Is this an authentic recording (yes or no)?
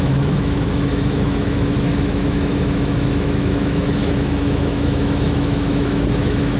no